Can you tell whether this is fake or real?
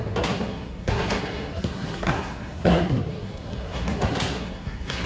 fake